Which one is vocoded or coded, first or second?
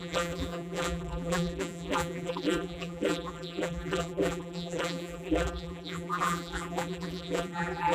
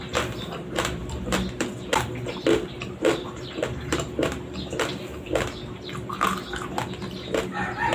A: first